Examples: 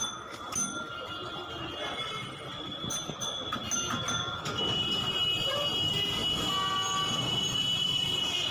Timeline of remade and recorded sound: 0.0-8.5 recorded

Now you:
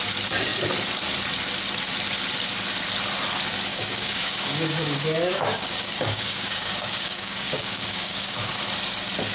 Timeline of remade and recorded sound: 0.0-3.7 recorded; 3.7-8.5 remade; 8.5-9.3 recorded